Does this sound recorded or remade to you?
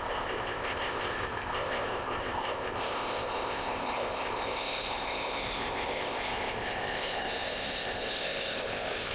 remade